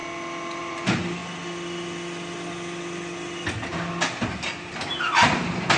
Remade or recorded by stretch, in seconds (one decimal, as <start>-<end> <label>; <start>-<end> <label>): 0.0-0.6 recorded; 0.6-1.2 remade; 1.2-4.4 recorded; 4.4-5.8 remade